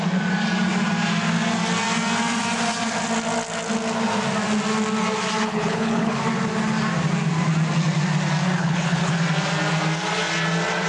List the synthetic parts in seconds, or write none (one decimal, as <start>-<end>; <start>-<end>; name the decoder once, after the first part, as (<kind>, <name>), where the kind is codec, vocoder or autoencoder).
5.4-6.2 (codec, HILCodec); 8.6-9.1